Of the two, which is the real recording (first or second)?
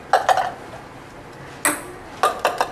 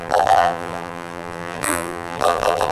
first